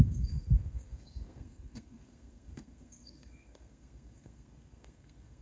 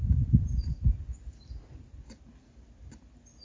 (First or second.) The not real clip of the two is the first